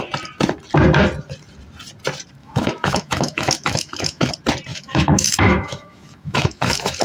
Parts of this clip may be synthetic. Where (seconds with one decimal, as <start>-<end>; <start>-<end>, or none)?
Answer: 2.4-4.3; 4.7-7.0